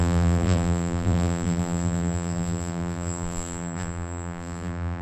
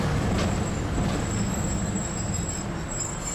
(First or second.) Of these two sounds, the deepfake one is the first